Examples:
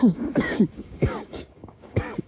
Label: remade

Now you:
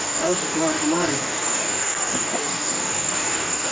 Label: remade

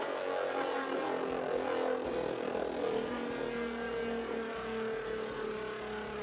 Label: recorded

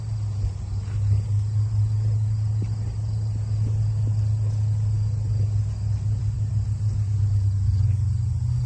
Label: recorded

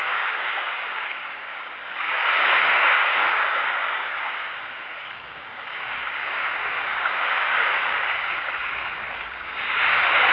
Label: remade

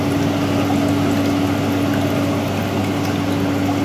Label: recorded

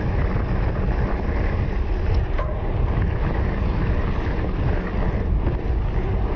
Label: recorded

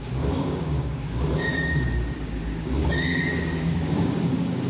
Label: remade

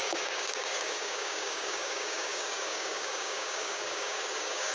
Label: remade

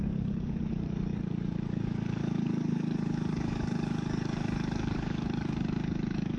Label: remade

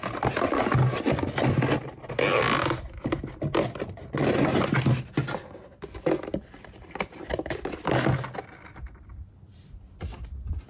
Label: recorded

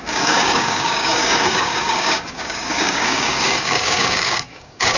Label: remade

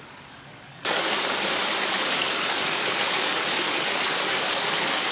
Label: remade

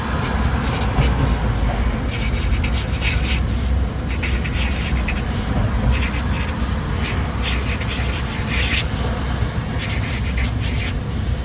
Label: recorded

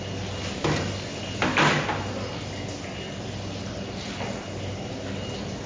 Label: recorded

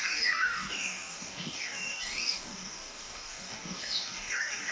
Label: remade